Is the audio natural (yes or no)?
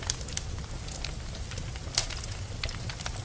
yes